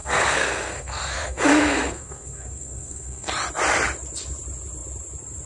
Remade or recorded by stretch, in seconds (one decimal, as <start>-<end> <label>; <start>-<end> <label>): 0.0-3.3 remade; 3.3-5.5 recorded